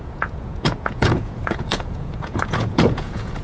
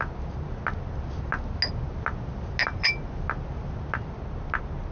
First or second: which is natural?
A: second